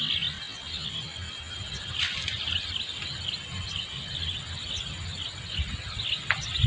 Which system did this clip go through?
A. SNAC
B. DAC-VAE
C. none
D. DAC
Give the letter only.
C